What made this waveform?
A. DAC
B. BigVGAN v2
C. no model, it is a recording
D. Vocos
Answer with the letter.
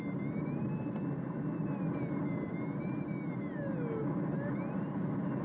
C